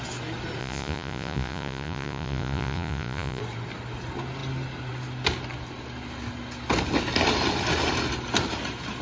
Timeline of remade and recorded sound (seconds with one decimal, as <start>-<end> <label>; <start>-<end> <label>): 0.0-0.6 recorded; 0.6-3.4 remade; 3.4-9.0 recorded